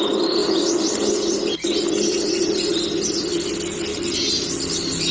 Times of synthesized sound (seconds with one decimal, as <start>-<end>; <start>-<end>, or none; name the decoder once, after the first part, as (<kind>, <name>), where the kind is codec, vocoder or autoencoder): 3.9-4.5 (vocoder, BigVGAN v2)